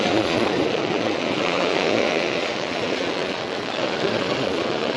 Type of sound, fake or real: fake